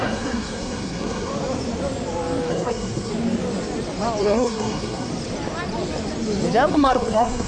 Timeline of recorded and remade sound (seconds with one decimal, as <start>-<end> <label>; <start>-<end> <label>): 0.0-1.3 remade; 1.3-2.5 recorded; 2.5-3.1 remade; 3.1-4.2 recorded; 4.2-5.1 remade; 5.1-6.7 recorded; 6.7-7.5 remade